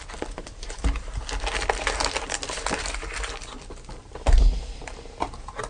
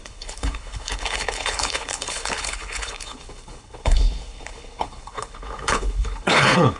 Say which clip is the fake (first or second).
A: second